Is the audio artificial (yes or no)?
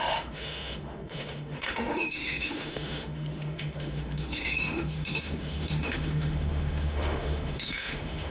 yes